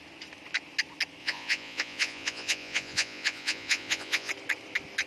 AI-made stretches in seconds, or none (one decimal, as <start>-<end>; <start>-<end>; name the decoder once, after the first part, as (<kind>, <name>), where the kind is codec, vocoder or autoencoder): 1.2-4.3 (vocoder, Vocos)